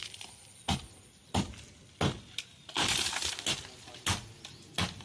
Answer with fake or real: real